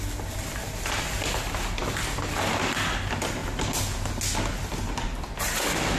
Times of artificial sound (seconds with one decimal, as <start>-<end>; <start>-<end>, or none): none